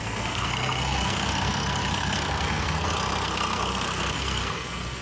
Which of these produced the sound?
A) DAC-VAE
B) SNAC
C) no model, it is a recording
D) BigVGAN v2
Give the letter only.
B